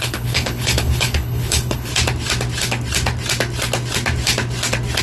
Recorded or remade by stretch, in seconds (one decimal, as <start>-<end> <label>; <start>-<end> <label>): 0.0-1.9 remade; 1.9-5.0 recorded